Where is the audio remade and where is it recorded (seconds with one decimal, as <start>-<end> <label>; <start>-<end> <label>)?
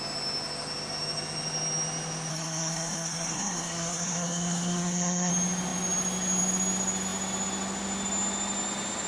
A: 0.0-2.3 recorded; 2.3-5.3 remade; 5.3-9.1 recorded